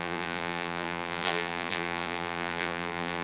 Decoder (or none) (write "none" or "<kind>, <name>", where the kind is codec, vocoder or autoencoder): vocoder, BigVGAN v2